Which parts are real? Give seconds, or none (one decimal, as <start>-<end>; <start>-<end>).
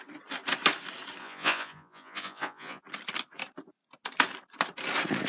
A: 0.0-1.2; 2.8-5.3